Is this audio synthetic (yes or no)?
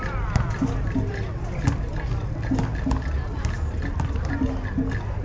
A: no